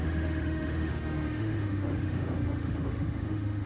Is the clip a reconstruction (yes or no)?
yes